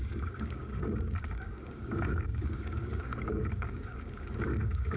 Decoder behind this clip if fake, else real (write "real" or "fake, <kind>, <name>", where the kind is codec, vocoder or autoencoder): fake, codec, DAC